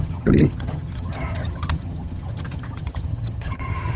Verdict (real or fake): fake